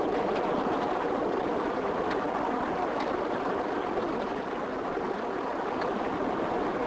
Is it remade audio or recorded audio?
recorded